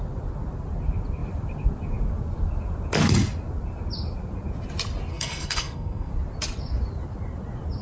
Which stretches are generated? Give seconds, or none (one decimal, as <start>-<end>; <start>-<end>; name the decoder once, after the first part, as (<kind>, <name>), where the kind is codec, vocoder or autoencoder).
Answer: 5.1-6.1 (codec, SNAC)